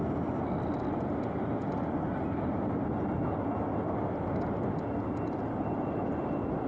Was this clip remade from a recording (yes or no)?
no